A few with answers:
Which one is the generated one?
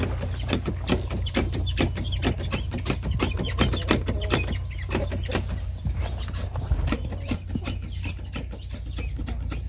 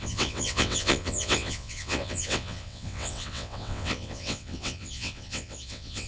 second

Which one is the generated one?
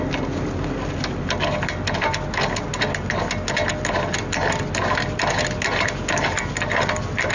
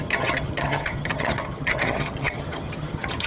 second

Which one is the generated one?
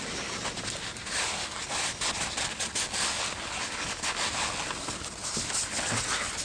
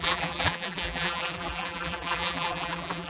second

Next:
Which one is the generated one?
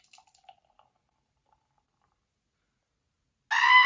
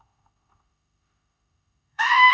second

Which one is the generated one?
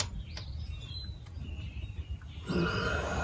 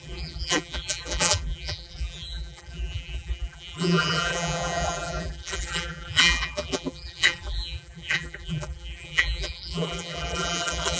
second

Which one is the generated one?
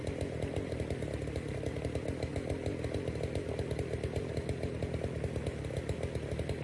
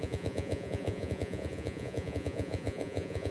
second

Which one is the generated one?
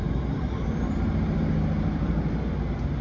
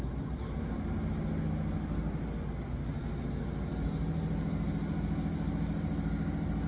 first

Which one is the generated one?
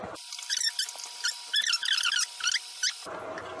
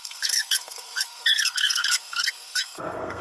second